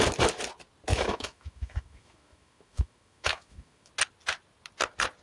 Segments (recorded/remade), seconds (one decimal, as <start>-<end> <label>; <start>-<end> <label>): 0.0-0.9 recorded; 0.9-3.9 remade; 3.9-5.2 recorded